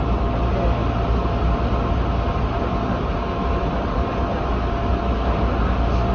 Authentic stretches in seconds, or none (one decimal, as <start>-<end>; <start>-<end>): 0.0-6.1